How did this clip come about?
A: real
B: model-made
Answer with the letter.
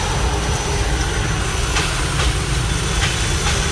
A